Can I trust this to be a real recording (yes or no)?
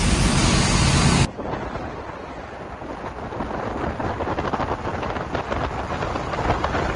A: yes